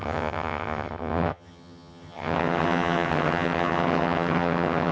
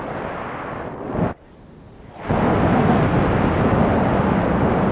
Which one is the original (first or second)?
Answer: second